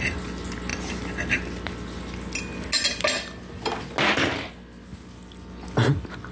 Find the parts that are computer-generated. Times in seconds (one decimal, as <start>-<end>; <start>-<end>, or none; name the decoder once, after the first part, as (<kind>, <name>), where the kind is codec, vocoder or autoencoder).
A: none